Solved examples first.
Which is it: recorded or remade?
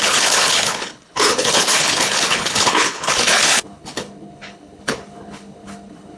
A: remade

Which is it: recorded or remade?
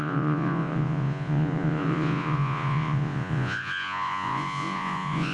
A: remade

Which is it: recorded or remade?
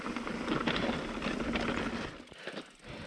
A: recorded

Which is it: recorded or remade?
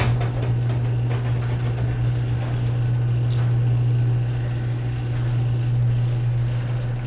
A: recorded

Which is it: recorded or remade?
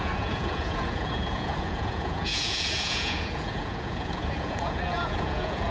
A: remade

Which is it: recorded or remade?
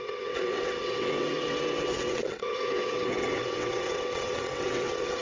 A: remade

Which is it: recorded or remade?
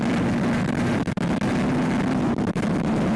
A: recorded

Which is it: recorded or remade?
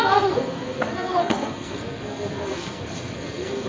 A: remade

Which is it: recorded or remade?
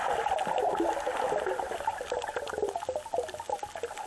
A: recorded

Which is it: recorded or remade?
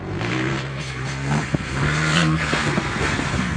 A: remade